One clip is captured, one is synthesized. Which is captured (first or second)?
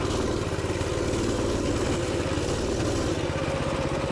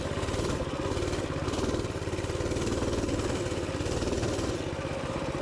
first